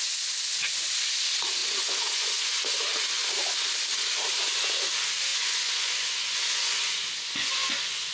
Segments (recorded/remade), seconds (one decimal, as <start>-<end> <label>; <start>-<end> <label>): 0.0-1.6 recorded; 1.6-2.8 remade; 2.8-5.3 recorded; 5.3-8.1 remade